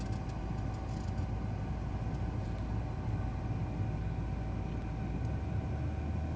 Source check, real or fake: real